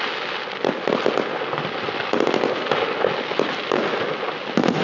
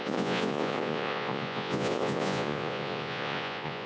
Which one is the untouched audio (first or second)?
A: first